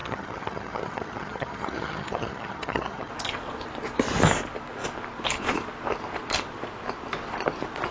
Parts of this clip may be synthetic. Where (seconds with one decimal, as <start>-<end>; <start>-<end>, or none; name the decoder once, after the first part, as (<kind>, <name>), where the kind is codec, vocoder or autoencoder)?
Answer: 0.0-3.1 (vocoder, HiFi-GAN)